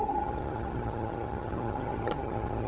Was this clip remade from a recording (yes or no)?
yes